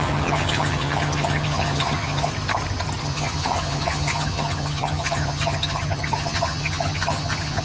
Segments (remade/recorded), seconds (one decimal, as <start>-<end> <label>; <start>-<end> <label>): 0.0-2.3 remade; 2.3-3.0 recorded; 3.0-7.6 remade